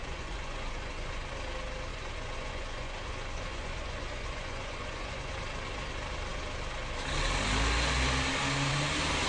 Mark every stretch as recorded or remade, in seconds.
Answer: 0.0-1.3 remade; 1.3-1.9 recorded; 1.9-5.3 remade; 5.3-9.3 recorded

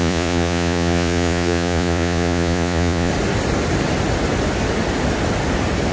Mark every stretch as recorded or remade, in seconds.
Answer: 0.0-3.1 remade; 3.1-5.9 recorded

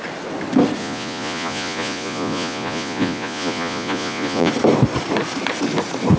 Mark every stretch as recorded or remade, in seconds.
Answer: 0.0-0.8 recorded; 0.8-4.5 remade; 4.5-6.2 recorded

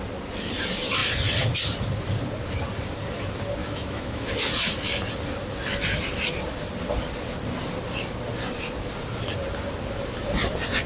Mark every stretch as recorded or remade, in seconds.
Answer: 0.0-3.6 recorded; 3.6-4.3 remade; 4.3-10.9 recorded

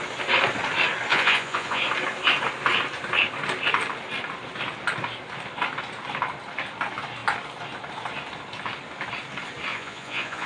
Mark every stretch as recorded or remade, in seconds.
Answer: 0.0-1.1 recorded; 1.1-1.8 remade; 1.8-9.7 recorded; 9.7-10.5 remade

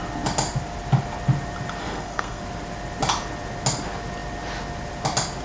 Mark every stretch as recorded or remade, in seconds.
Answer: 0.0-1.8 recorded; 1.8-2.4 remade; 2.4-5.4 recorded

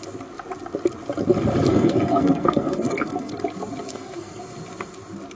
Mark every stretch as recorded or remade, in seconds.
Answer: 0.0-1.7 recorded; 1.7-3.3 remade; 3.3-3.9 recorded; 3.9-4.4 remade; 4.4-5.3 recorded

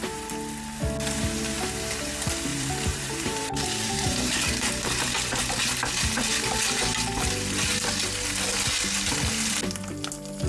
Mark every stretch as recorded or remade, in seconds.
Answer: 0.0-2.5 recorded; 2.5-5.3 remade; 5.3-10.5 recorded